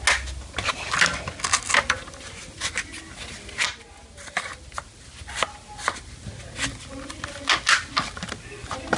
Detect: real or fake real